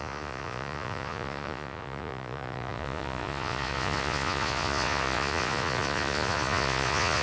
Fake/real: fake